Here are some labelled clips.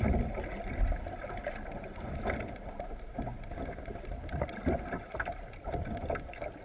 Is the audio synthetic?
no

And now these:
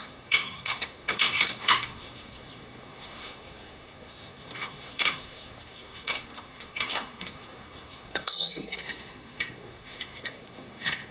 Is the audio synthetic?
yes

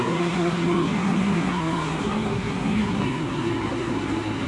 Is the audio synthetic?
yes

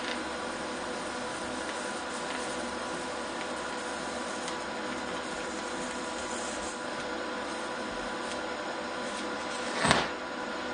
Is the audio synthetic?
no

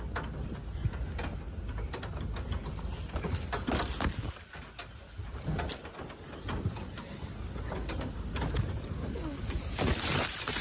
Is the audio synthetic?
no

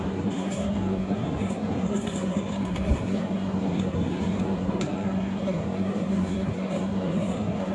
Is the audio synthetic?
yes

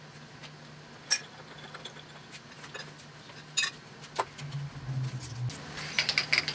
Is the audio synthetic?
no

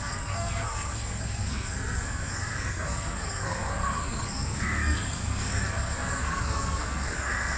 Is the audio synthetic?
yes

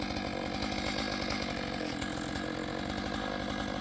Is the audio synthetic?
no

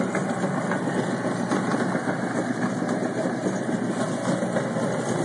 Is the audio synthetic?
no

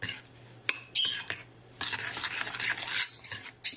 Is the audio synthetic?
no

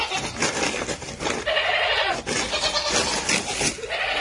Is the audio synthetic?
no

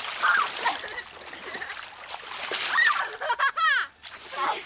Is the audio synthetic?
no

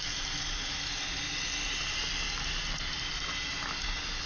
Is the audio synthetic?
no